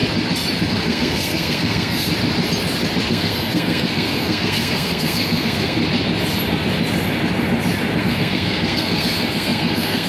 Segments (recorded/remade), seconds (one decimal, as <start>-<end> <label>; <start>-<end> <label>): 0.0-0.7 recorded; 0.7-2.1 remade; 2.1-3.1 recorded; 3.1-5.8 remade; 5.8-8.0 recorded; 8.0-10.1 remade